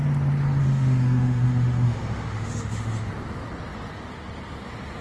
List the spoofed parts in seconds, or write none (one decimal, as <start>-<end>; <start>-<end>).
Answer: 0.6-3.1